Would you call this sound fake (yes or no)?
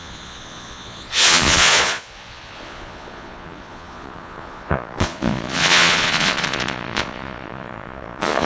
yes